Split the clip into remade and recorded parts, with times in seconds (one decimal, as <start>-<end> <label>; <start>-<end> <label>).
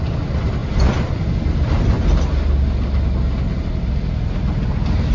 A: 0.0-5.1 recorded